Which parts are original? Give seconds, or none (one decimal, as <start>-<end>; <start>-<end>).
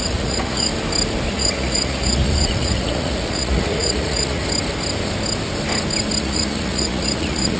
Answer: 0.7-1.3; 4.4-6.2